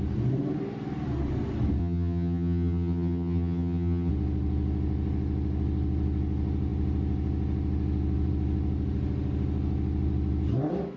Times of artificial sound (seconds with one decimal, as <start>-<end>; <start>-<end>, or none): 1.8-4.1